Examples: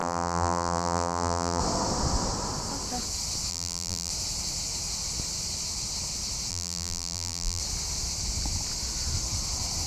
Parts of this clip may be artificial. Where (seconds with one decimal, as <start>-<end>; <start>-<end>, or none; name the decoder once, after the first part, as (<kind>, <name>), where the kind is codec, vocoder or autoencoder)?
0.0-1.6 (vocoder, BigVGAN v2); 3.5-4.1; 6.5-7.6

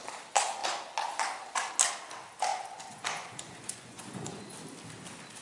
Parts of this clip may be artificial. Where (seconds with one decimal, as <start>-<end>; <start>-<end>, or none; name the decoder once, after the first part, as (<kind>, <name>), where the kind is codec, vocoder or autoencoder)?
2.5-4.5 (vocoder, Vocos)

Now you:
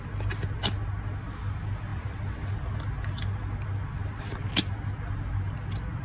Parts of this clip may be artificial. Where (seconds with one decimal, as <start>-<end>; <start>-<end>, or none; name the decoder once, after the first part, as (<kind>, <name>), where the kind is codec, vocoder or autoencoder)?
none

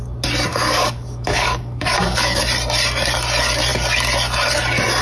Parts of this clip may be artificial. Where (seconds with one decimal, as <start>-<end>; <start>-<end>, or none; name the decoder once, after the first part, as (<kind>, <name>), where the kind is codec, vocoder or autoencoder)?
0.5-2.4 (codec, DAC)

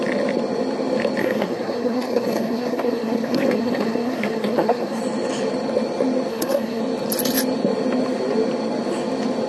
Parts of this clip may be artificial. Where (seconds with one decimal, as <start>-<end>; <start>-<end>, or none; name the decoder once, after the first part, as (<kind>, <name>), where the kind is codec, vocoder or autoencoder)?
1.2-5.0 (codec, SNAC); 6.3-6.8

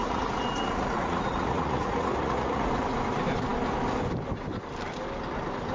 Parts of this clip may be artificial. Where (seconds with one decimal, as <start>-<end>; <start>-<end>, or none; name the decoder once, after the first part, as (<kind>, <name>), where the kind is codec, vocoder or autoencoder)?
0.0-2.7 (vocoder, Vocos)

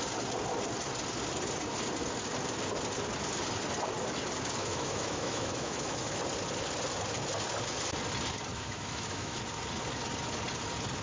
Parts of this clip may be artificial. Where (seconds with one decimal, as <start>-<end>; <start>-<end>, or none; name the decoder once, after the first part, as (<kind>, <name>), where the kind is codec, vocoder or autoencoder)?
4.6-6.2 (autoencoder, DAC-VAE); 8.5-9.4

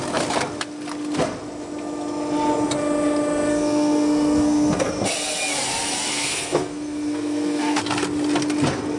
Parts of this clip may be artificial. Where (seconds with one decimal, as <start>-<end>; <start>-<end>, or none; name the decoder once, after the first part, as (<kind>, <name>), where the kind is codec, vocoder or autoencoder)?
3.5-4.9 (codec, SNAC); 6.1-7.8